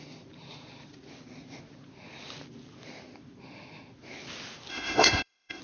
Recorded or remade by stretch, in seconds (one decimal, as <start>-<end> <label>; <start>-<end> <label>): 0.0-4.7 recorded; 4.7-5.6 remade